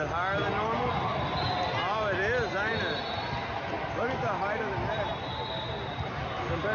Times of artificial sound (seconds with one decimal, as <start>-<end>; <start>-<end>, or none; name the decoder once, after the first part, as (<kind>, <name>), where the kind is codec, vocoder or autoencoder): none

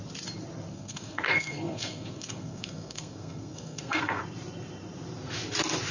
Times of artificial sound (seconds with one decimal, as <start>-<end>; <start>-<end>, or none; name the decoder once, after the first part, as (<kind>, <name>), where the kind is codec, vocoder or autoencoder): 0.7-4.2 (codec, SNAC)

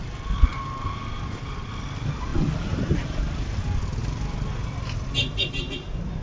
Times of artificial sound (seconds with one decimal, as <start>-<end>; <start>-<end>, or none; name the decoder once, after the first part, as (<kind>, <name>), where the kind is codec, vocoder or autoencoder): none